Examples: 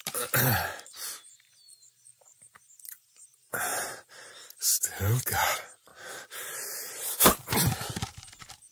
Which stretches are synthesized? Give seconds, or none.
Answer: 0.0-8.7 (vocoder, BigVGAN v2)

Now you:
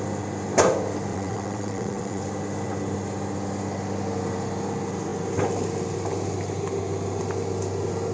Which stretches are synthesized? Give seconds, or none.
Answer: 1.1-2.2 (vocoder, WaveNeXt)

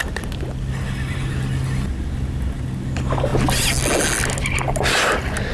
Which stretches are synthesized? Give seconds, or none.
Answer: none

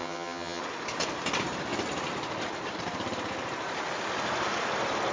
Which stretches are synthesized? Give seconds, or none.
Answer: 0.0-0.6 (vocoder, HiFi-GAN)

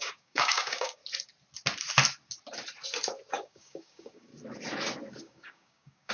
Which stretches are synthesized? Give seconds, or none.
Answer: 0.0-1.0 (codec, DAC); 3.3-4.3; 5.2-6.1

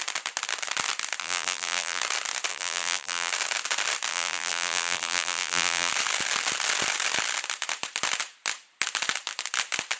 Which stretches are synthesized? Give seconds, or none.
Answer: 1.2-2.0 (vocoder, BigVGAN v2); 2.5-3.3; 4.1-5.9

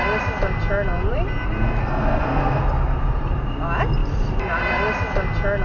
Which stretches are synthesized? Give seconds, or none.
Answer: 1.8-2.6 (codec, SNAC)